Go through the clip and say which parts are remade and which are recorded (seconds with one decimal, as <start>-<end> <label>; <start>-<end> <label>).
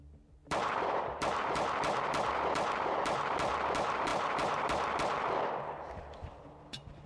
0.0-7.1 recorded